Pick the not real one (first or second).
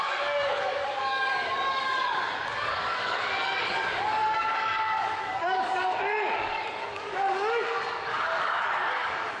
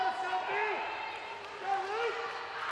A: first